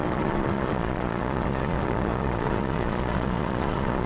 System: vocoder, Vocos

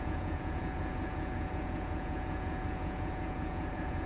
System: vocoder, Vocos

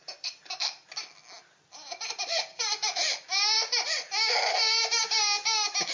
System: none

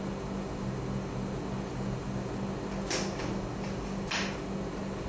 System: none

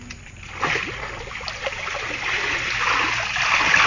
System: none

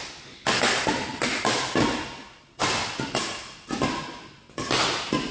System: none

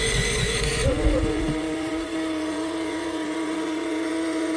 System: vocoder, Vocos